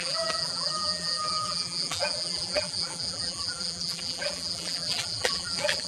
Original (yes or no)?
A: no